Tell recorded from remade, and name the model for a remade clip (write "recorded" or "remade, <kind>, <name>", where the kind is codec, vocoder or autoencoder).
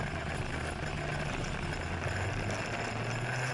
recorded